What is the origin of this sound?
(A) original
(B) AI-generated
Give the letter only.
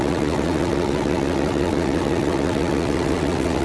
B